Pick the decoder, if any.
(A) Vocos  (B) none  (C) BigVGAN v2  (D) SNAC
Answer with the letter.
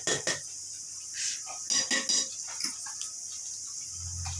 B